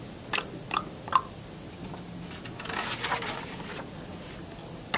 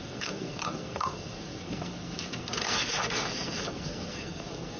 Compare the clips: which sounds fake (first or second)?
second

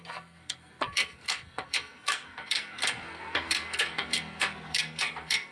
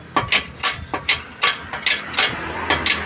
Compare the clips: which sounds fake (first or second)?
first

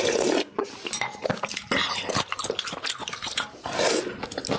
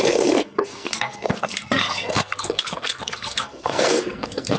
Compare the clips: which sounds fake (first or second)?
second